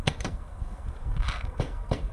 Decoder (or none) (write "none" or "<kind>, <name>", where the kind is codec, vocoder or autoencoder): codec, SNAC